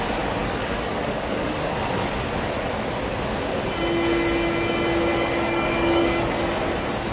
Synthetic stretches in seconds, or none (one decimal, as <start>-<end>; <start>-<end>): 0.4-2.1; 5.1-6.4